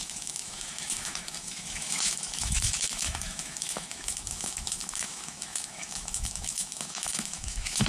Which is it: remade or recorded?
remade